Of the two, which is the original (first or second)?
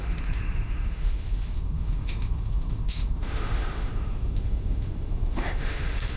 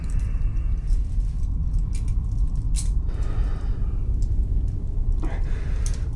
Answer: second